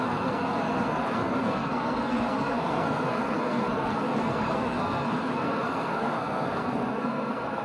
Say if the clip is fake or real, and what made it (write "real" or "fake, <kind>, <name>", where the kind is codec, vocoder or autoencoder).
fake, codec, SNAC